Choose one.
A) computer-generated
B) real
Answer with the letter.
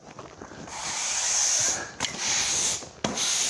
B